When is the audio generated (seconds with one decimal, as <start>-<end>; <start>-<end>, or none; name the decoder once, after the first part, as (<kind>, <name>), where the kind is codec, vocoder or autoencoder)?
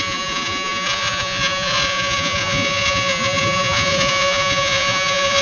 0.0-5.4 (vocoder, Vocos)